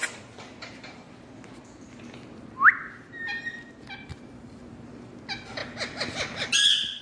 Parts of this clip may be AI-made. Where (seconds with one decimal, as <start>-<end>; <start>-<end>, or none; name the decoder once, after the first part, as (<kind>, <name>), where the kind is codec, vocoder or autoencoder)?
none